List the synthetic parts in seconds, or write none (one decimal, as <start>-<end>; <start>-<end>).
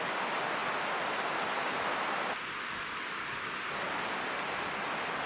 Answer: none